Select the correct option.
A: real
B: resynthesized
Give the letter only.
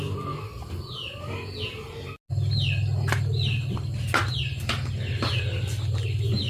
A